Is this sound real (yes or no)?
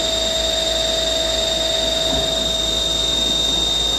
yes